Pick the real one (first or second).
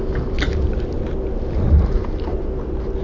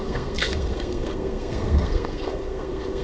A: first